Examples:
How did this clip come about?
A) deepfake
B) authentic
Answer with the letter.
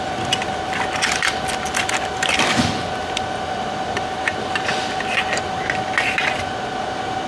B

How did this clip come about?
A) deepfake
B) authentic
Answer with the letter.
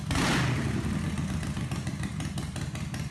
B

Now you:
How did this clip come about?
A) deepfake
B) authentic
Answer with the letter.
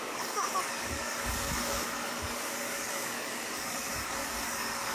A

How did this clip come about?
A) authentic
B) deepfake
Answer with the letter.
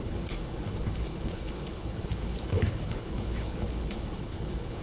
B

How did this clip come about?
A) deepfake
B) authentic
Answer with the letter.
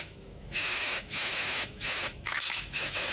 A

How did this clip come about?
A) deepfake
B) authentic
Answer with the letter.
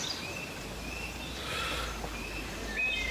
B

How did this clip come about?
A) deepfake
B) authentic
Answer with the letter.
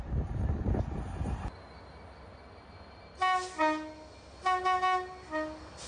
B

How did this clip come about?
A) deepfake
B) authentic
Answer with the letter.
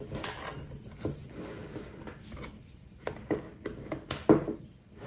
B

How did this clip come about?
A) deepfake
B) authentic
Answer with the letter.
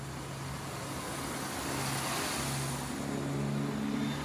B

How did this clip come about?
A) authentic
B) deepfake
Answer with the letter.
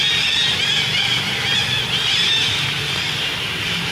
A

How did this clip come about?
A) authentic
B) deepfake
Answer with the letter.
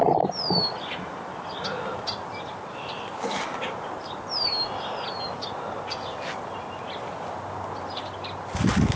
A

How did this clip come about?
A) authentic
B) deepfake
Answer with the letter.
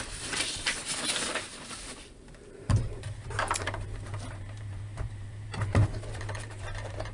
B